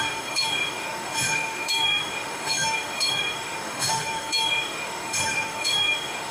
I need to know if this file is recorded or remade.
remade